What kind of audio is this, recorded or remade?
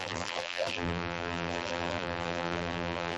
remade